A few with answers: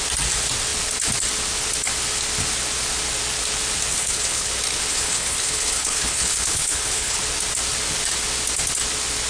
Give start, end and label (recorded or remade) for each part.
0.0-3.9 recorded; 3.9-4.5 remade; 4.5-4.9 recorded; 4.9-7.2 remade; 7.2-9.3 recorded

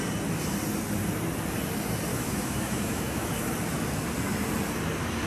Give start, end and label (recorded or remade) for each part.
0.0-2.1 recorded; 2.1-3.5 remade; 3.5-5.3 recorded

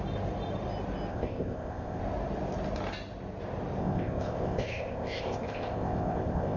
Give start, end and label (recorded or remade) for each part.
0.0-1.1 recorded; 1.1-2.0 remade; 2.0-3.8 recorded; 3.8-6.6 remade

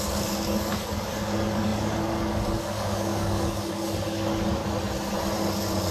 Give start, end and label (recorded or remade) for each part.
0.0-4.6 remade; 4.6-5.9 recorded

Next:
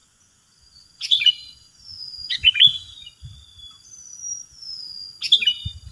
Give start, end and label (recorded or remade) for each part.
0.0-3.1 remade; 3.1-4.4 recorded; 4.4-5.2 remade; 5.2-5.9 recorded

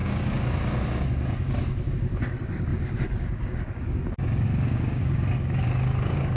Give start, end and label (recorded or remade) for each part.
0.0-6.4 remade

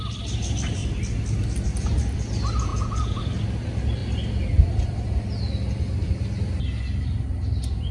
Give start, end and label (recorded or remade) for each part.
0.0-2.7 recorded; 2.7-3.2 remade; 3.2-7.9 recorded

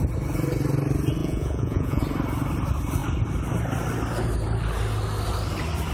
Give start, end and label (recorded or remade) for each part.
0.0-1.2 recorded; 1.2-2.0 remade; 2.0-5.9 recorded